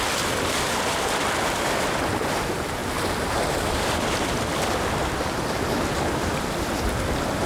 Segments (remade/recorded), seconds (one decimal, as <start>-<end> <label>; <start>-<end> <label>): 0.0-7.5 remade